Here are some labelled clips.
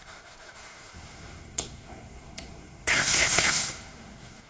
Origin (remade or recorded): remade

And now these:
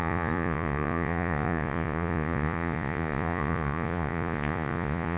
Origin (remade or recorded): remade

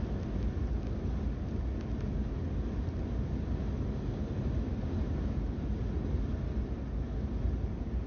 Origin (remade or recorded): recorded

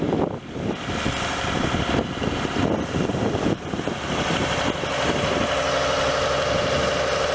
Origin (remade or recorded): recorded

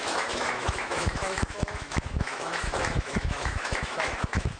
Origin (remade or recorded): remade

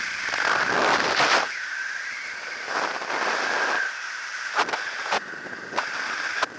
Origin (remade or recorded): recorded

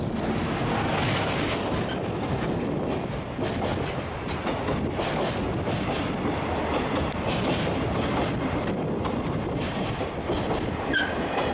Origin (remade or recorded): recorded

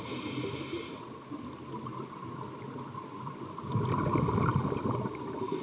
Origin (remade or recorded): recorded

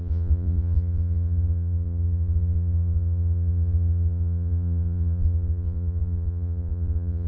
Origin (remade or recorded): remade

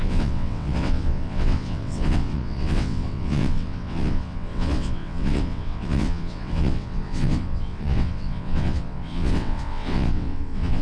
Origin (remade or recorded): remade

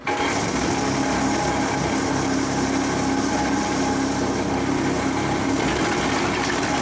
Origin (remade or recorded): recorded